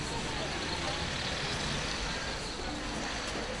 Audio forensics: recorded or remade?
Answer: recorded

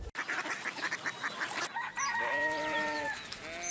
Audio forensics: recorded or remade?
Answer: recorded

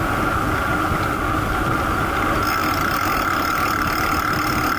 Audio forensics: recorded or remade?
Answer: recorded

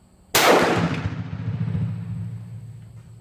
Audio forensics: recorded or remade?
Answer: recorded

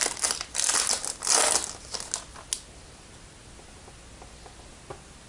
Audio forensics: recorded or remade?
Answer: recorded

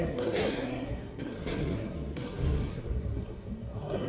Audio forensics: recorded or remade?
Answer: remade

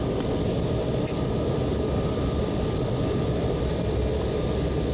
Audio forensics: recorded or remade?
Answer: recorded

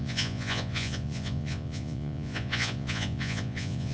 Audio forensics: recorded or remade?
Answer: remade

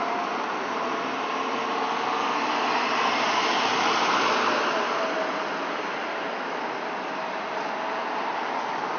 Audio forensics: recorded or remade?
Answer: recorded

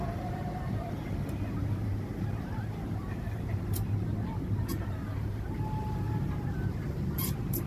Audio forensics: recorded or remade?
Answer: remade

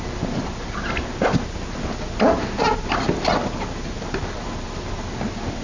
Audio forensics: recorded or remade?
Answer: recorded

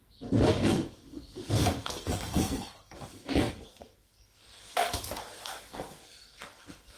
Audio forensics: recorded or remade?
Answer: remade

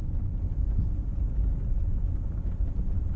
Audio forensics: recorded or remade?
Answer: recorded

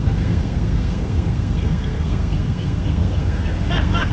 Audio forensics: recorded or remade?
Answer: remade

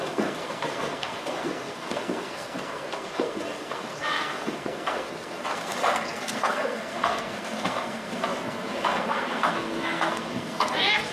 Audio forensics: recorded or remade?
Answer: remade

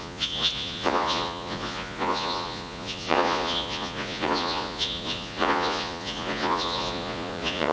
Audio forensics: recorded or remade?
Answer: remade